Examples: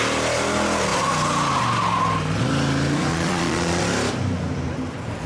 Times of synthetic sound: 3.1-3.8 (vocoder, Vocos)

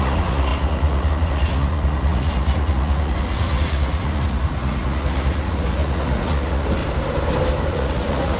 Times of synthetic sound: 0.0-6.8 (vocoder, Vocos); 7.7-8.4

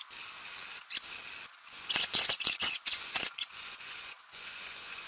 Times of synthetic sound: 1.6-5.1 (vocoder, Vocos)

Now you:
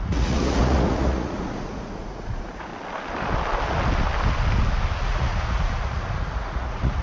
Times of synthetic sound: 0.0-2.7 (vocoder, Vocos); 5.0-7.0

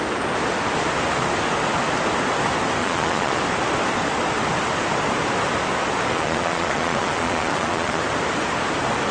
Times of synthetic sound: 2.8-3.4 (vocoder, Vocos); 6.1-8.0